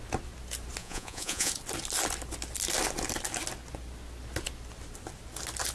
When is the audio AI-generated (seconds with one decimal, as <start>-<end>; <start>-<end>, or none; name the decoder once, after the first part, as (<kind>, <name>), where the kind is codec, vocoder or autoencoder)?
0.8-1.5 (vocoder, Vocos)